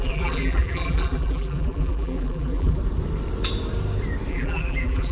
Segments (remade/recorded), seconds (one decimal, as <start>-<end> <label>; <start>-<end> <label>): 0.0-2.8 remade; 2.8-4.3 recorded; 4.3-5.1 remade